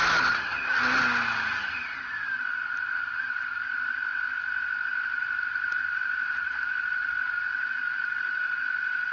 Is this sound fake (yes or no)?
no